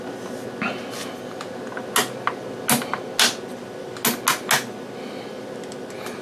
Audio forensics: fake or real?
real